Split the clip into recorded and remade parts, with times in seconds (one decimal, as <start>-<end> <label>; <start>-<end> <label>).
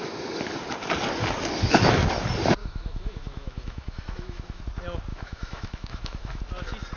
0.0-2.6 recorded; 2.6-4.6 remade; 4.6-5.1 recorded; 5.1-6.4 remade; 6.4-7.0 recorded